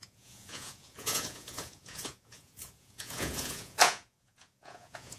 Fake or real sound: fake